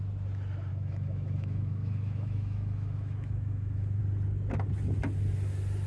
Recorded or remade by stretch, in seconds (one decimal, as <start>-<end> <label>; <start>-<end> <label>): 0.0-0.7 recorded; 0.7-4.0 remade; 4.0-5.9 recorded